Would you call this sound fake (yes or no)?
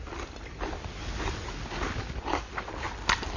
no